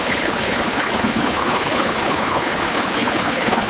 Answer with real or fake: fake